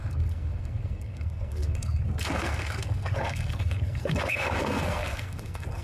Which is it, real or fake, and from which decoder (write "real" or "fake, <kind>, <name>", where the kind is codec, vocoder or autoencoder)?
fake, codec, SNAC